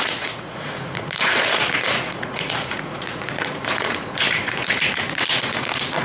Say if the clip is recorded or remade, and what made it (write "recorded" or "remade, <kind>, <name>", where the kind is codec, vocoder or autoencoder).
remade, vocoder, Vocos